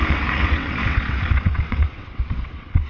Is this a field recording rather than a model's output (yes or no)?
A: no